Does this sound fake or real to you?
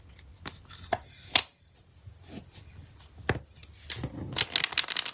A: real